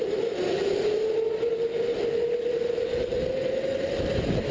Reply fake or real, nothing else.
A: real